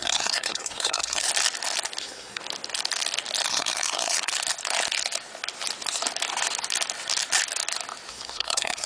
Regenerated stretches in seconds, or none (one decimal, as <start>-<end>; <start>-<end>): 0.0-1.3; 2.0-2.4; 3.5-4.3; 8.1-8.9